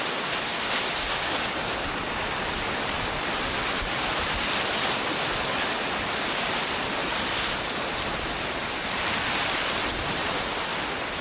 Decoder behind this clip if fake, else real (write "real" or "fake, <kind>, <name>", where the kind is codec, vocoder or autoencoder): real